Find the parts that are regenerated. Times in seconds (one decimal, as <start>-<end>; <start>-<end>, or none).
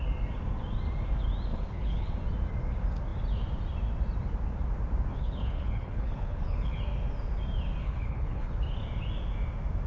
1.5-2.1; 5.1-6.8; 7.8-8.5